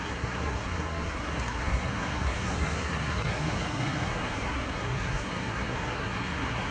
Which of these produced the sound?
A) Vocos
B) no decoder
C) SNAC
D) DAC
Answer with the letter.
C